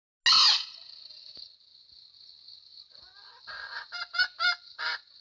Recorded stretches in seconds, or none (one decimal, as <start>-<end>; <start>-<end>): 0.0-5.2